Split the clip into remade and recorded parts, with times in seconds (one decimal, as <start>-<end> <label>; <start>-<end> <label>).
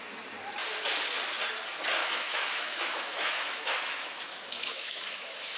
0.0-2.0 recorded; 2.0-5.6 remade